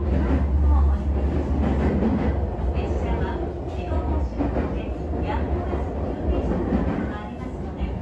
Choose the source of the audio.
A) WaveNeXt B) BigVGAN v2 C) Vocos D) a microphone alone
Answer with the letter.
D